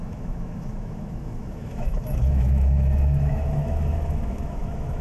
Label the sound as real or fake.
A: fake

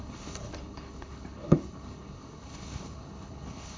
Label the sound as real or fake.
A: fake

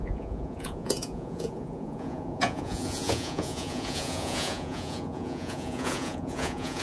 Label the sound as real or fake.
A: fake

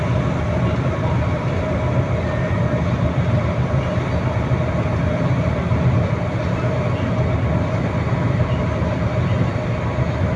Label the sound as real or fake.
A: real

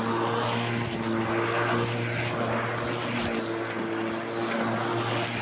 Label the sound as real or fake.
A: real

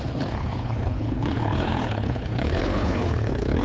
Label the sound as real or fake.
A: fake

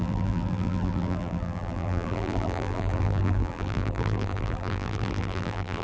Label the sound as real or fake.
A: fake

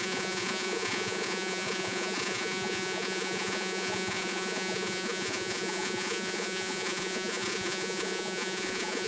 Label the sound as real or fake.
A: fake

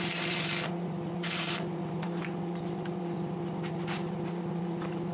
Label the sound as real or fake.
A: fake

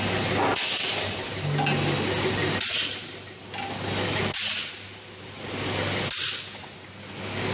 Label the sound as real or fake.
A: real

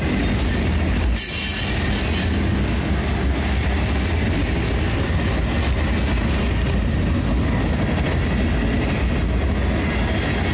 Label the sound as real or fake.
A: real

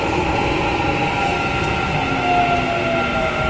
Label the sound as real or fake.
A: real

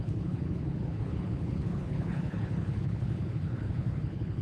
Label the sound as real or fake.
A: fake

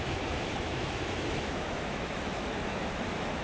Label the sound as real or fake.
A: fake